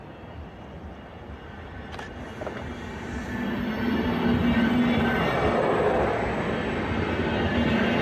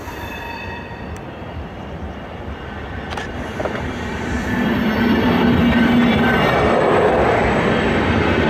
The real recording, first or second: first